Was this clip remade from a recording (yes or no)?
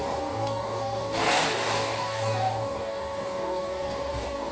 yes